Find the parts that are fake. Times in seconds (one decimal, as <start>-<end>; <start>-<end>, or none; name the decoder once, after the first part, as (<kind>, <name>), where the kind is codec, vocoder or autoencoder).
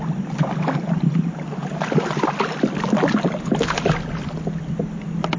none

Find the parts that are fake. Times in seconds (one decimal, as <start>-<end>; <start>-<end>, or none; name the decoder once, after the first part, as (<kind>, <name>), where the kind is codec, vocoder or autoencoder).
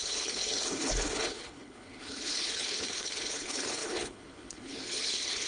0.0-5.5 (codec, HILCodec)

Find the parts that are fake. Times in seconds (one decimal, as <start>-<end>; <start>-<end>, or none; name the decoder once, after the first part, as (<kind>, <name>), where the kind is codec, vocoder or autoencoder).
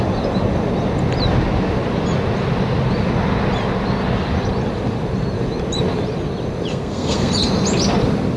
6.7-7.3 (codec, SNAC)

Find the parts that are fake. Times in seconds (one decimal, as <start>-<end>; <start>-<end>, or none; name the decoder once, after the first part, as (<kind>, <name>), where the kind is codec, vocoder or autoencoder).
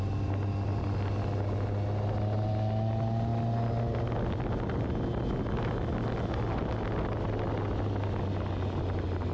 none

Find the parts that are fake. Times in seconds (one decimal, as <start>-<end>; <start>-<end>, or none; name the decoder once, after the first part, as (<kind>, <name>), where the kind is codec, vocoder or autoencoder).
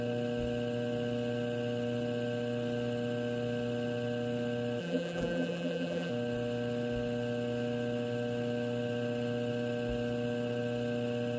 4.8-6.1 (vocoder, BigVGAN v2)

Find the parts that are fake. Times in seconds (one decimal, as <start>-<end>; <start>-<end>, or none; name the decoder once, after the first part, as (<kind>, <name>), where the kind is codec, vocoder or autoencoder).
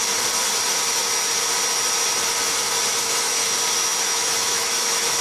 3.0-3.4 (autoencoder, DAC-VAE); 4.0-5.2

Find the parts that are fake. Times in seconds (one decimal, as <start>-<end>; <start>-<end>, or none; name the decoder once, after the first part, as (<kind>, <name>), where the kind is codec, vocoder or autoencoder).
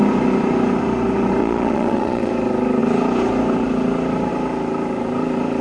1.4-2.3 (vocoder, Vocos)